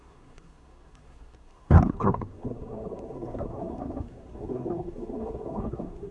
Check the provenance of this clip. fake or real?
fake